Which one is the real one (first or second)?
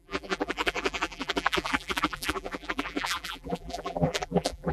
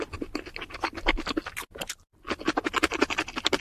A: second